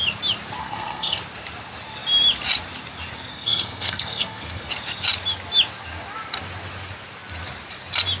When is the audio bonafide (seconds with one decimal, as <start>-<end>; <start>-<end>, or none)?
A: 0.0-0.6; 1.2-3.3; 4.7-8.2